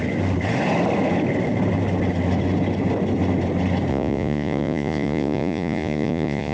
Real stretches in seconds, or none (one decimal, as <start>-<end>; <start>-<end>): 0.0-3.9

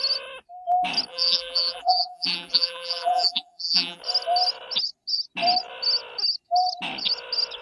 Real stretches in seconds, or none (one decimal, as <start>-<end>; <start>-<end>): 0.0-1.1; 4.0-7.6

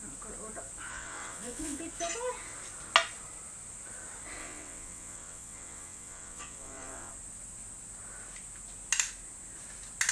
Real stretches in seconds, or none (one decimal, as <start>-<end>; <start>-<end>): 0.0-0.9; 1.8-4.4; 7.1-10.1